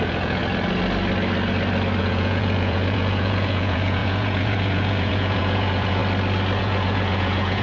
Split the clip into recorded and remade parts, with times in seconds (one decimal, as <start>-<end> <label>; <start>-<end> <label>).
0.0-0.4 remade; 0.4-2.0 recorded; 2.0-6.0 remade; 6.0-6.6 recorded; 6.6-7.6 remade